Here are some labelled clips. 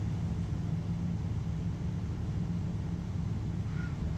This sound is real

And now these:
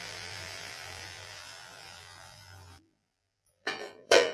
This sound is fake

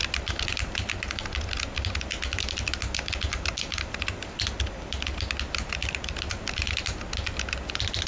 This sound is real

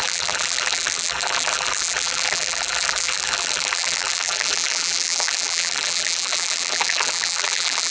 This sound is fake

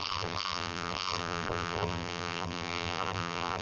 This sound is fake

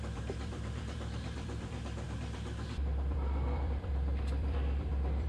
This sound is fake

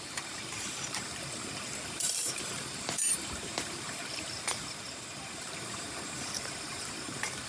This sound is fake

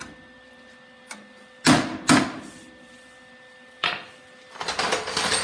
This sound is real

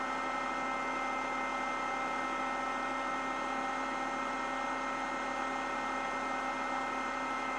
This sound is real